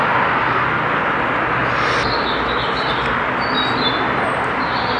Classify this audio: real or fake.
real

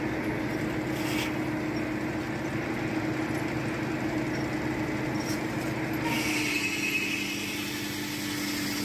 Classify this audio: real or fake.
real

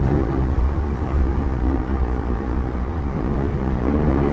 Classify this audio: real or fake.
fake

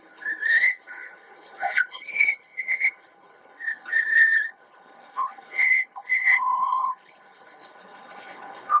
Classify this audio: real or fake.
fake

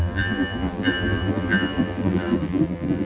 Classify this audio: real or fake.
fake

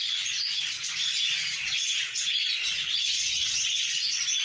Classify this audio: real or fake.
fake